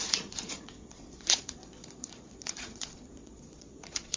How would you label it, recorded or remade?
remade